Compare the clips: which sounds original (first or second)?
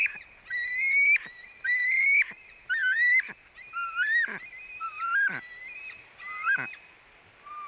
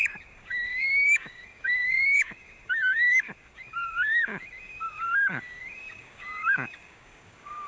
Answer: first